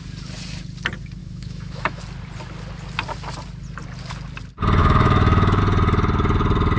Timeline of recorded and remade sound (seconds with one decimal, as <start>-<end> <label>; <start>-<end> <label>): 0.0-1.2 recorded; 1.2-2.0 remade; 2.0-4.8 recorded; 4.8-5.6 remade; 5.6-6.8 recorded